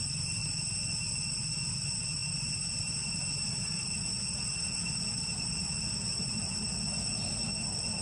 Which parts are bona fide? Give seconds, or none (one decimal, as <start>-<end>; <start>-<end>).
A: 0.0-8.0